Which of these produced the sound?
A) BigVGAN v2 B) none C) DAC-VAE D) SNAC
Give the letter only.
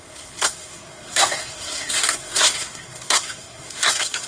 D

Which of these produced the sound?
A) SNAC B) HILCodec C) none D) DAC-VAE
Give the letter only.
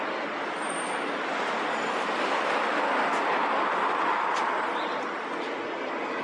C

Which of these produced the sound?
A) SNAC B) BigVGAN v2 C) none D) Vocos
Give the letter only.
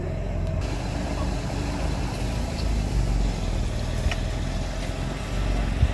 C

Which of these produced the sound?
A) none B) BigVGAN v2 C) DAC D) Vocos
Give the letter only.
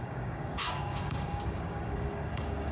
C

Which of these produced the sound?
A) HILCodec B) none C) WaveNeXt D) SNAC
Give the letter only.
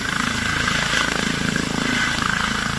B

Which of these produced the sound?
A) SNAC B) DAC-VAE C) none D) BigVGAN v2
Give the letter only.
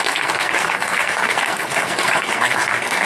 A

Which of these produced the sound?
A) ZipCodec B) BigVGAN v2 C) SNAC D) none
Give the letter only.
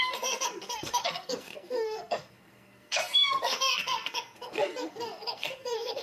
C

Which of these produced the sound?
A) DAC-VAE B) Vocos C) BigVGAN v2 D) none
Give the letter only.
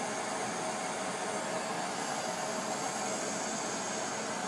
D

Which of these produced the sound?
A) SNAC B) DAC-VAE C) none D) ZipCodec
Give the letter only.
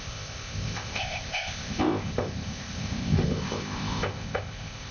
D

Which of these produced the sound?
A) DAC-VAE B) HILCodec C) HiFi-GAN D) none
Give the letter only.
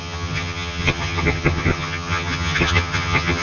C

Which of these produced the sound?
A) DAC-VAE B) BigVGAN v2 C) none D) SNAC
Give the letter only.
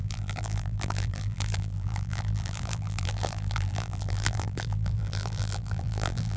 B